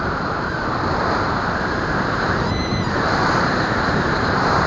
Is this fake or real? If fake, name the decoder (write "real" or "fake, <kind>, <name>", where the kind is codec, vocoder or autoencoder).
fake, vocoder, BigVGAN v2